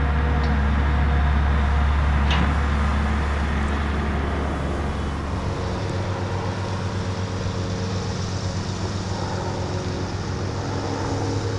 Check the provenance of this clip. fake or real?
real